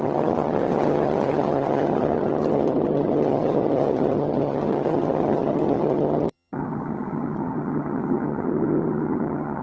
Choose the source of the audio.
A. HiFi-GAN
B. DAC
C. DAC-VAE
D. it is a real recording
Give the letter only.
A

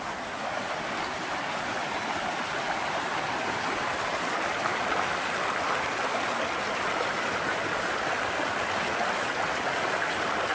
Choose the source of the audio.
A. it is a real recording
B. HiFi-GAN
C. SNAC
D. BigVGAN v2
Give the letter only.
A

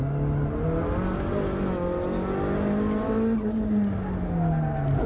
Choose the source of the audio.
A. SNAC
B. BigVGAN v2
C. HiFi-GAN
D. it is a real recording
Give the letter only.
D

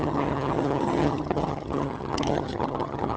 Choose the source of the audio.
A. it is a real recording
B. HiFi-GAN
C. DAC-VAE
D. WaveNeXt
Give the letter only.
B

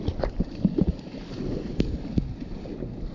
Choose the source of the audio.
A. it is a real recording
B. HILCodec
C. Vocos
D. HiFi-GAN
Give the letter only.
A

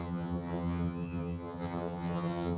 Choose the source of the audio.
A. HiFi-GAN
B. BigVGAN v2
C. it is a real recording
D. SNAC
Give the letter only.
A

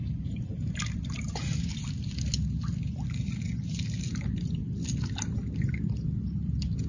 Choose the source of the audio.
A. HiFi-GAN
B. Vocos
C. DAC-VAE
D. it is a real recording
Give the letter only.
D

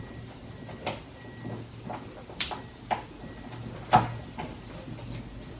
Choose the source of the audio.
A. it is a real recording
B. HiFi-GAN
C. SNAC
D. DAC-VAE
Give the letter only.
A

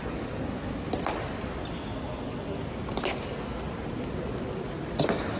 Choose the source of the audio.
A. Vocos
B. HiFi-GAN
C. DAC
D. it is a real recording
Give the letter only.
D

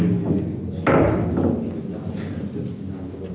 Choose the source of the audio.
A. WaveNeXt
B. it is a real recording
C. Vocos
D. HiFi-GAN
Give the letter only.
B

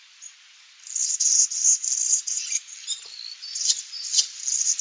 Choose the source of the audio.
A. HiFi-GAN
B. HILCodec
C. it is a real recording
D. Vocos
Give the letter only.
C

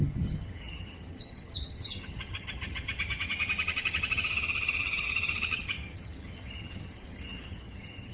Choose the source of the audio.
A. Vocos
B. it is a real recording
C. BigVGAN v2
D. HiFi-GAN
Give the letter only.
D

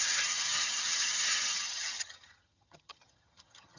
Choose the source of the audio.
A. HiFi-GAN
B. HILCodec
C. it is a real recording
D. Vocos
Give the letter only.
A